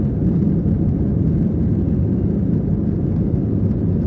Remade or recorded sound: recorded